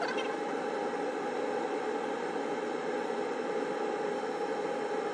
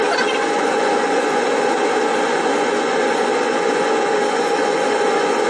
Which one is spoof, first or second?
second